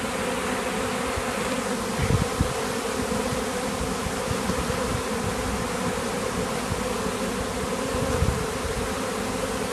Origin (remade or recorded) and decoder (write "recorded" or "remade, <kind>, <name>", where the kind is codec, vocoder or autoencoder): recorded